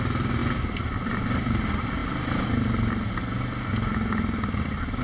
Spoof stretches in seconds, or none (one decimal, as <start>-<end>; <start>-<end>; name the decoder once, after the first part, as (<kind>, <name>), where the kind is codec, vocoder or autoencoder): 0.4-1.1 (vocoder, BigVGAN v2)